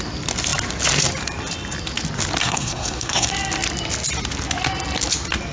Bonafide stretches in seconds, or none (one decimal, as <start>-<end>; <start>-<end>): 0.0-2.4; 3.3-5.5